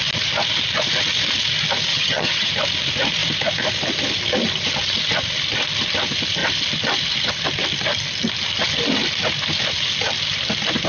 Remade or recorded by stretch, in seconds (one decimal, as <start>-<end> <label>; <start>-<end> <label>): 0.0-1.9 recorded; 1.9-2.5 remade; 2.5-10.9 recorded